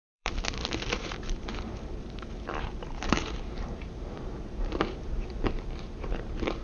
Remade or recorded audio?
remade